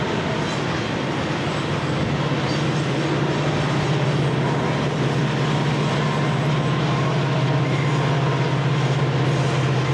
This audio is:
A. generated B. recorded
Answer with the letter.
B